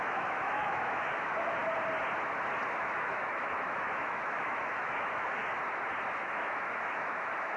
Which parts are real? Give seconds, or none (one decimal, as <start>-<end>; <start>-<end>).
1.6-2.8; 5.4-6.2